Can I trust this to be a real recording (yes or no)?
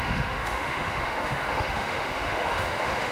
no